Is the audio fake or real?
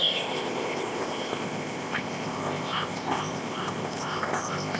fake